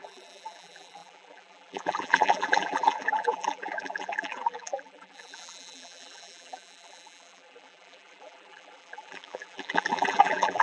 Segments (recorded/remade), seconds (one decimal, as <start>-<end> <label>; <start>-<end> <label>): 0.0-10.6 remade